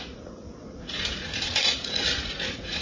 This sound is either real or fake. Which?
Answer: fake